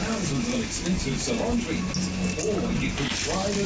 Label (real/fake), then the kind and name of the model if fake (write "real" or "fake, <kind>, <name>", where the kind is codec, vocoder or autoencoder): real